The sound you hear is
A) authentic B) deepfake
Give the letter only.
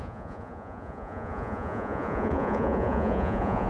B